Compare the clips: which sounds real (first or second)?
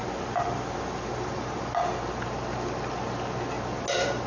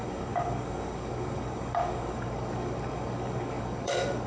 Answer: first